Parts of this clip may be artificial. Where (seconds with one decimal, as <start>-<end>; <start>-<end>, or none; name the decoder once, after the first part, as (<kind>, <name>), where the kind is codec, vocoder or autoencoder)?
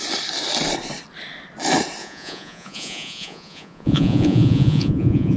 2.0-5.4 (vocoder, Vocos)